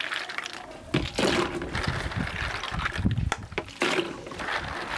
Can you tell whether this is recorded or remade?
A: recorded